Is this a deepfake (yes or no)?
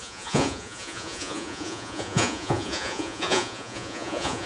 yes